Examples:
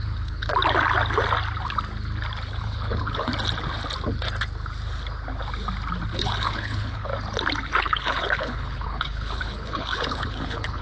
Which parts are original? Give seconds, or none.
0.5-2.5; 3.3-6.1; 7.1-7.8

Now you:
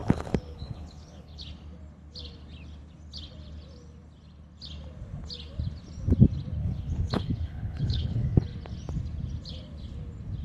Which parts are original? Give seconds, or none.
1.4-6.6; 8.4-10.4

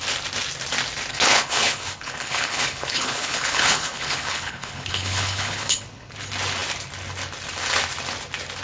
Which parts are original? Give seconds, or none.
0.0-1.1; 6.1-8.6